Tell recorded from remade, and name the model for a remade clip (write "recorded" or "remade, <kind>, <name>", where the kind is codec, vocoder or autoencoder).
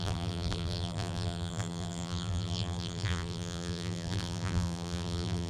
remade, vocoder, BigVGAN v2